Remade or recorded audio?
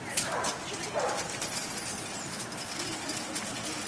recorded